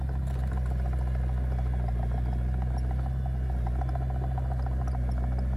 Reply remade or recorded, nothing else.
recorded